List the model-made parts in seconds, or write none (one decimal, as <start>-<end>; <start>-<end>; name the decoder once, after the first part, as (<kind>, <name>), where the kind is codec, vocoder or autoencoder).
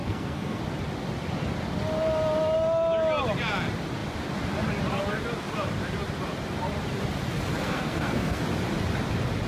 0.0-0.6 (codec, SNAC); 7.6-8.4